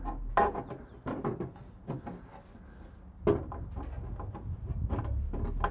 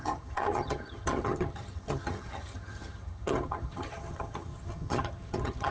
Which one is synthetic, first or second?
second